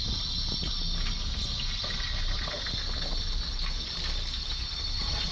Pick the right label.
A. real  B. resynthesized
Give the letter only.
A